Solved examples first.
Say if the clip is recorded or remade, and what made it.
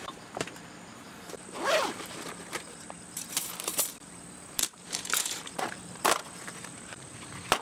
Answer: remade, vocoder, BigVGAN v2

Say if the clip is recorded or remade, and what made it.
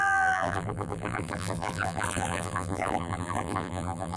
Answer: remade, vocoder, BigVGAN v2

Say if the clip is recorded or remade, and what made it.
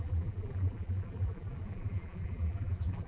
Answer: remade, vocoder, BigVGAN v2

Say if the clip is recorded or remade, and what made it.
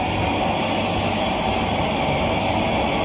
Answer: recorded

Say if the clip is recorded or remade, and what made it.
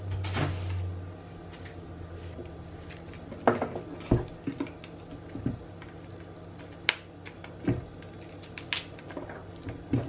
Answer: recorded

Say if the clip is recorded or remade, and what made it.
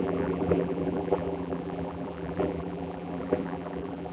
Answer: remade, vocoder, BigVGAN v2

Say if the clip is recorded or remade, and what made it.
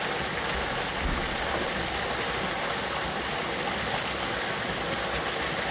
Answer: recorded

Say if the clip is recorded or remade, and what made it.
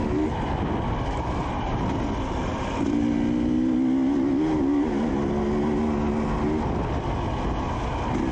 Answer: recorded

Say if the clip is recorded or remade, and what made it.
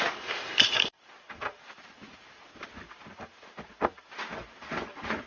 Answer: remade, vocoder, BigVGAN v2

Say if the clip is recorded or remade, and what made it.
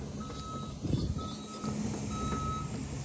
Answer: recorded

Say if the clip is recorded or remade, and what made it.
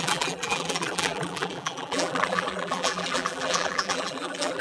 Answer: remade, vocoder, BigVGAN v2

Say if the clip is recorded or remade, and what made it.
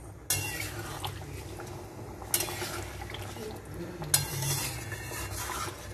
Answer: recorded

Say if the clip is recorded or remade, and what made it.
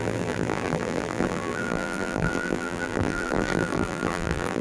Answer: remade, vocoder, BigVGAN v2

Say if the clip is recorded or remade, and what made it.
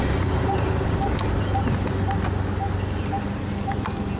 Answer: recorded